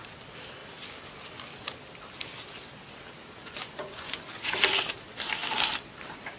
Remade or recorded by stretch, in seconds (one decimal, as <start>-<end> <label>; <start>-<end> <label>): 0.0-3.4 recorded; 3.4-4.6 remade; 4.6-6.4 recorded